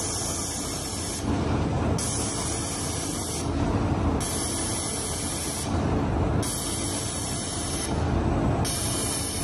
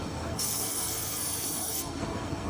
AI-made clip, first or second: second